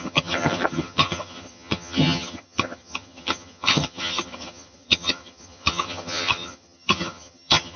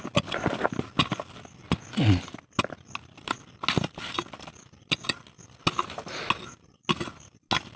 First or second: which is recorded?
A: second